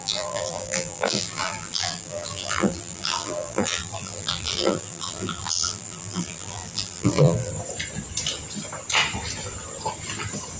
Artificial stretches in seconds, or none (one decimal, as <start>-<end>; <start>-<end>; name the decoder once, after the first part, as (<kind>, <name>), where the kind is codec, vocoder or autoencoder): 0.0-7.5 (vocoder, BigVGAN v2)